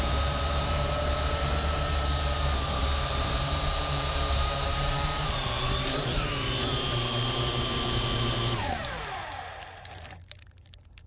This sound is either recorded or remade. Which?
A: remade